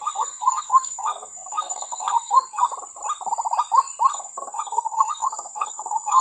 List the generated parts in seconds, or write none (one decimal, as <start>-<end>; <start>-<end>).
0.0-2.7; 4.1-6.2